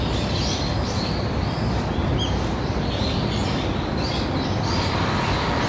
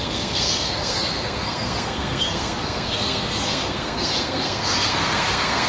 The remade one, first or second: second